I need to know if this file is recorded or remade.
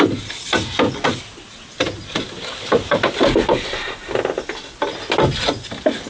recorded